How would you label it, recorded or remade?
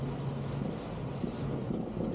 recorded